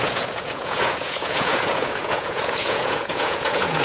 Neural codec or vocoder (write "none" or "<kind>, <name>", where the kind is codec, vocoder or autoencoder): vocoder, Vocos